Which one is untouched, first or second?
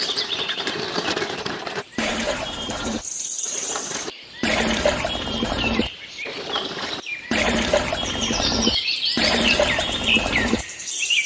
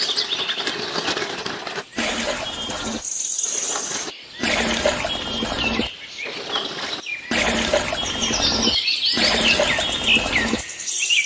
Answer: second